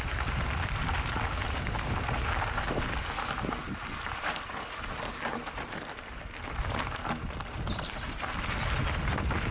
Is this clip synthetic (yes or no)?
no